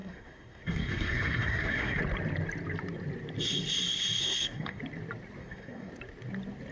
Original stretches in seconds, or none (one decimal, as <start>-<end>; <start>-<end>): 2.0-4.2; 4.8-5.4; 5.9-6.7